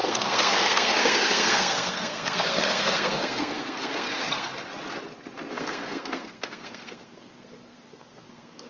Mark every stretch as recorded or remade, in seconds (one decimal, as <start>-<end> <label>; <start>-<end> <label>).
0.0-4.5 remade; 4.5-5.5 recorded; 5.5-8.7 remade